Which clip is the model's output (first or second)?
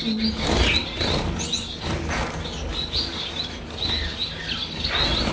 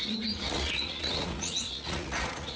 second